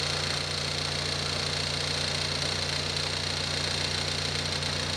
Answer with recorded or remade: recorded